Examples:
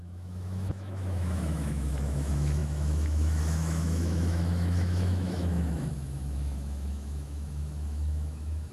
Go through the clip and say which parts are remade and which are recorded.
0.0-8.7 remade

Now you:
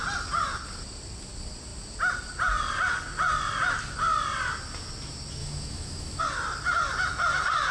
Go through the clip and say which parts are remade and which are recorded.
0.0-5.4 recorded; 5.4-6.2 remade; 6.2-7.7 recorded

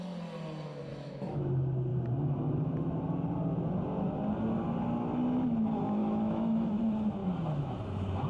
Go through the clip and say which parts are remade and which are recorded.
0.0-0.9 recorded; 0.9-1.5 remade; 1.5-6.0 recorded; 6.0-6.8 remade; 6.8-7.2 recorded; 7.2-7.8 remade; 7.8-8.3 recorded

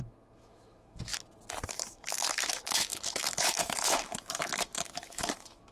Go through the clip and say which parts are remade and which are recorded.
0.0-1.1 remade; 1.1-1.7 recorded; 1.7-5.7 remade